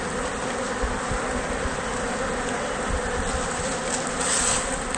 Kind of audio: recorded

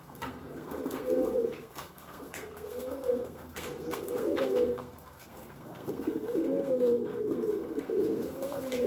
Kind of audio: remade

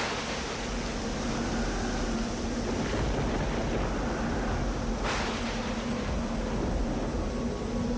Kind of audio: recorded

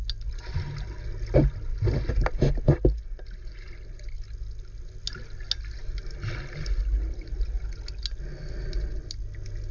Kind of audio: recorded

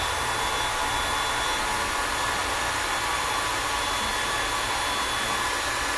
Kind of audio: recorded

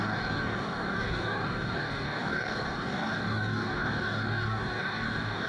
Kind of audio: remade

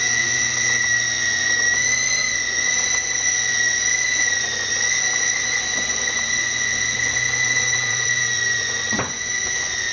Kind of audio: remade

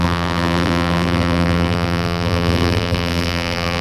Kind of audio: remade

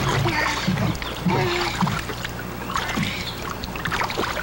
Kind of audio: recorded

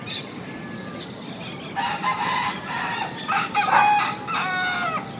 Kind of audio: recorded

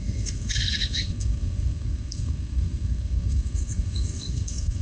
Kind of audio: remade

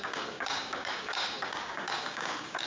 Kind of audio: remade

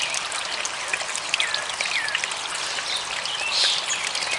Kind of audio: recorded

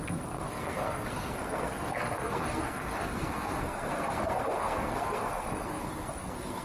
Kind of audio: remade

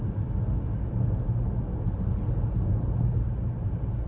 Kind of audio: recorded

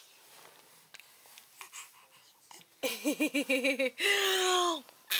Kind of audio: recorded